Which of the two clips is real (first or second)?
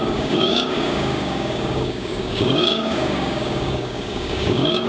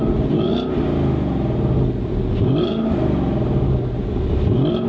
second